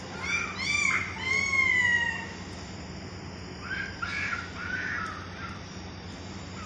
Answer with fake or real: real